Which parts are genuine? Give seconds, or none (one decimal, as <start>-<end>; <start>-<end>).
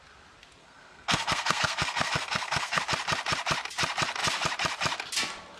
0.0-0.6; 2.8-5.6